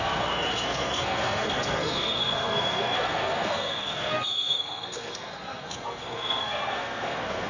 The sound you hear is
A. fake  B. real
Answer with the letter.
A